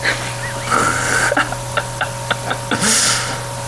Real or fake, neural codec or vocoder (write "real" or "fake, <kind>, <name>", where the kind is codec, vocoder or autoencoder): real